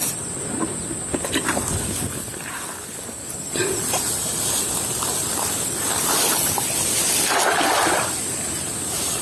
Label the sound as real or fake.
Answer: real